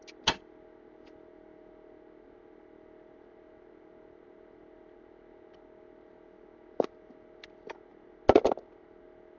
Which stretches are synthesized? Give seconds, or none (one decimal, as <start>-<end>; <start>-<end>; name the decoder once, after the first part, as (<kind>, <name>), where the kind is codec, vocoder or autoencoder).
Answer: none